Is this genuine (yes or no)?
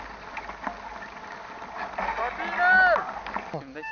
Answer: yes